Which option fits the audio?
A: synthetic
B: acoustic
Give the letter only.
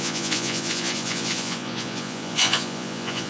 A